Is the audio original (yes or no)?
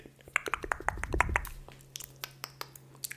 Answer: yes